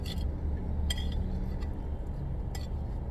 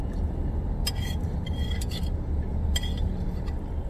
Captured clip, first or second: first